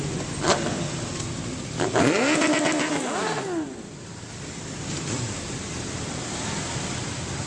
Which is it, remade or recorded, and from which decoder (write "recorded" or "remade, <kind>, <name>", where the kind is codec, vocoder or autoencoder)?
recorded